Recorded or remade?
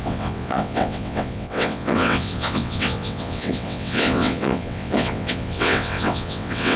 remade